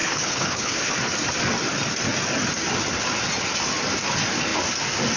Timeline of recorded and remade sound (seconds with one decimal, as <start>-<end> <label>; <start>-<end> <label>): 0.0-0.9 remade; 0.9-5.2 recorded